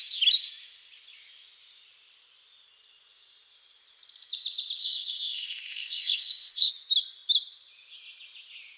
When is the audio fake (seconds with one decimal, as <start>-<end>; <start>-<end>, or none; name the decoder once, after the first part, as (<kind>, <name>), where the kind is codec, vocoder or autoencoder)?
4.8-6.7 (codec, ZipCodec)